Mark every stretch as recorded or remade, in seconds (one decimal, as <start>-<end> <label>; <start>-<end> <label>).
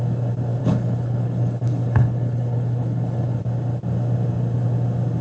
0.0-0.6 recorded; 0.6-3.4 remade; 3.4-5.2 recorded